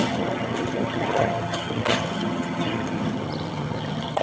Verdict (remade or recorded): remade